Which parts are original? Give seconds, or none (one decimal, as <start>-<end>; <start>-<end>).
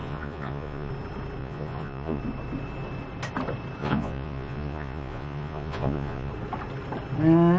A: 0.9-1.4; 2.2-3.8; 6.3-7.6